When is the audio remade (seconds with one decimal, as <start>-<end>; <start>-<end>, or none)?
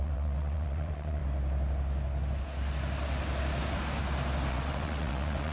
0.0-1.2; 4.5-5.5